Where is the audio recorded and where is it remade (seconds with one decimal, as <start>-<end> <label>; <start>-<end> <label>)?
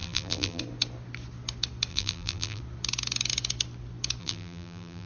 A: 0.0-0.6 remade; 0.6-1.9 recorded; 1.9-2.6 remade; 2.6-4.2 recorded; 4.2-5.1 remade